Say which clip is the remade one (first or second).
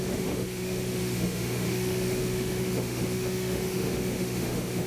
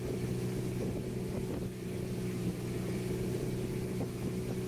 first